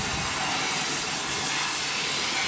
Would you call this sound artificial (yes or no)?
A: no